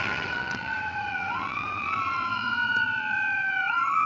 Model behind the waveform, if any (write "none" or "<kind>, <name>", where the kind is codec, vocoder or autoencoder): vocoder, WaveNeXt